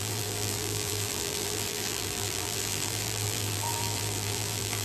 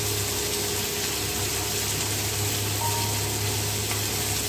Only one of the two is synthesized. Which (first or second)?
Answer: first